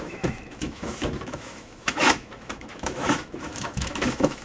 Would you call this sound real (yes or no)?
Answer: no